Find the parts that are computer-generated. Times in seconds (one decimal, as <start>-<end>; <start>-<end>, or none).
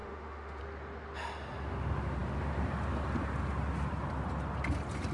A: 0.0-0.6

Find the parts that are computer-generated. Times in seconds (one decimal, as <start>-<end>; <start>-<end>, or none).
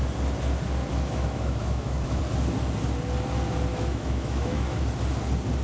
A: 0.9-2.2; 3.7-4.8